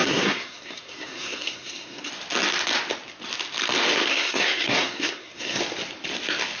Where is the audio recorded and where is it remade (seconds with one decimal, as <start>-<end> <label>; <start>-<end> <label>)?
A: 0.0-2.1 remade; 2.1-4.1 recorded; 4.1-5.6 remade; 5.6-6.6 recorded